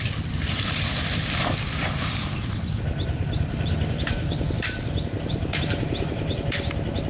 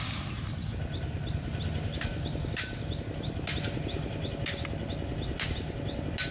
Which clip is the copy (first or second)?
first